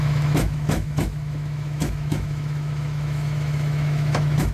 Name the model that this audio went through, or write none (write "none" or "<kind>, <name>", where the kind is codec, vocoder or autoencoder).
autoencoder, DAC-VAE